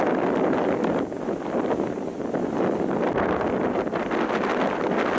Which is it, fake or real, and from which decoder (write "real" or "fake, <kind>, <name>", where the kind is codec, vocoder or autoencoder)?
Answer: real